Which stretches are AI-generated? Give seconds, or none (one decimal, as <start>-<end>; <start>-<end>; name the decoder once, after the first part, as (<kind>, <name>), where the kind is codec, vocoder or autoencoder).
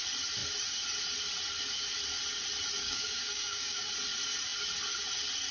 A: 2.8-3.9 (codec, DAC)